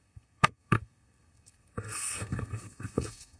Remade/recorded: remade